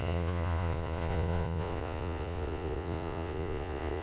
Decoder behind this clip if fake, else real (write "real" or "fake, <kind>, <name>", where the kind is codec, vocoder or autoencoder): fake, vocoder, Vocos